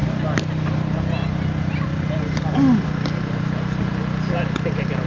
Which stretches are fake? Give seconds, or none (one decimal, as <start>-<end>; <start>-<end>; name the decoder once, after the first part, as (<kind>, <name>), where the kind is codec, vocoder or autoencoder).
none